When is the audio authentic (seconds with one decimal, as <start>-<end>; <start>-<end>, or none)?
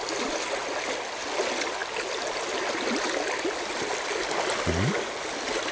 0.0-5.7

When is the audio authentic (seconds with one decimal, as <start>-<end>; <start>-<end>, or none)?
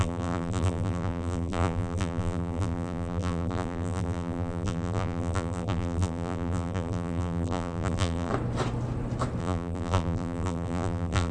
8.3-9.4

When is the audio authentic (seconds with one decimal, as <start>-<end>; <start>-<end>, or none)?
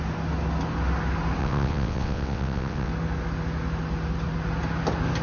0.0-1.4; 2.9-5.2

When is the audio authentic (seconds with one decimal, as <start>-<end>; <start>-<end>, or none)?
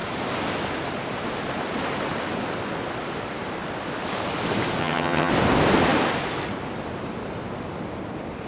0.0-4.8; 5.3-8.5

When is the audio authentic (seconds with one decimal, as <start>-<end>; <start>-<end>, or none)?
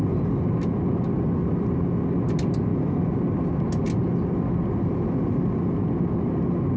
0.0-6.8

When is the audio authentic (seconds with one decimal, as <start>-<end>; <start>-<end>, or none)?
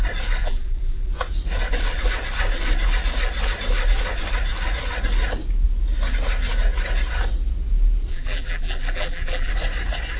0.0-0.4; 1.1-8.1; 9.5-10.2